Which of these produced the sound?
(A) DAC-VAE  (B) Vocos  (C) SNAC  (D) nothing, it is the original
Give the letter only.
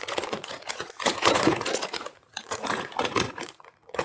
B